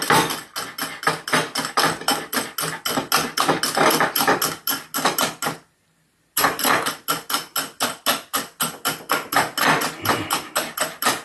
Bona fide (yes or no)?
yes